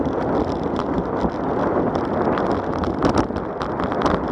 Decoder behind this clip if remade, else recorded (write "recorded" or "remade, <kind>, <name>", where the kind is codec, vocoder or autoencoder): recorded